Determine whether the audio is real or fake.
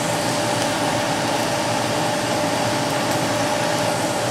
real